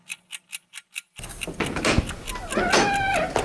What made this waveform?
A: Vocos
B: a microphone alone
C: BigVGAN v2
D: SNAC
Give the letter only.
B